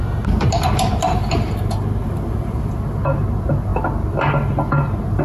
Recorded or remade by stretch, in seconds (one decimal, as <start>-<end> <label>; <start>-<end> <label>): 0.0-5.2 recorded